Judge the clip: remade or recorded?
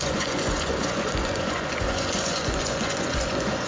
remade